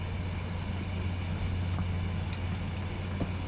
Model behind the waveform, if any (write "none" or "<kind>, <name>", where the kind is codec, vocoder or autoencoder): none